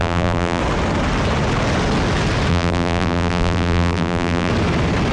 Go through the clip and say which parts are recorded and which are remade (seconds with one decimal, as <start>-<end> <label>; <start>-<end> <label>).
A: 0.0-0.6 remade; 0.6-2.5 recorded; 2.5-4.5 remade; 4.5-5.1 recorded